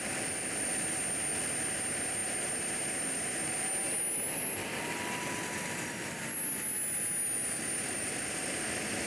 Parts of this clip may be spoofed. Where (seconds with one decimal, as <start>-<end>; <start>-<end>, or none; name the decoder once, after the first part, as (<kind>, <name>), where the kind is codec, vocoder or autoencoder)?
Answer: none